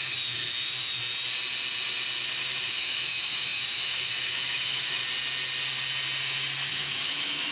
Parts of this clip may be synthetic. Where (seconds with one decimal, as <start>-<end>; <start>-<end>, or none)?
0.0-1.0; 2.6-5.0; 6.7-7.5